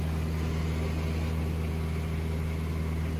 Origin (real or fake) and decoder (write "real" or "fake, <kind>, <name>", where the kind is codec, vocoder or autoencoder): real